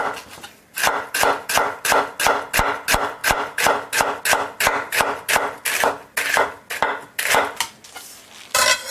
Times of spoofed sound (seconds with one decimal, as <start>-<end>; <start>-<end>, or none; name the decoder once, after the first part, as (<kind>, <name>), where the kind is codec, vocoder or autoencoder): none